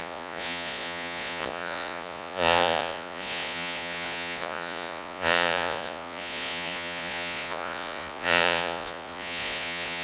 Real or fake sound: fake